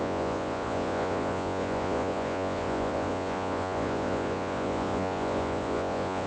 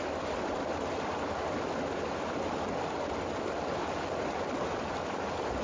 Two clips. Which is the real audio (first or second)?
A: second